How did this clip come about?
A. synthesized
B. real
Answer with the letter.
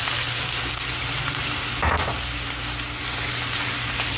B